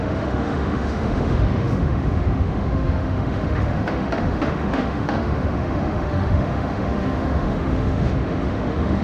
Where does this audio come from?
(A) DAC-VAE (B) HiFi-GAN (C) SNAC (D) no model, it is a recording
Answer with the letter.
A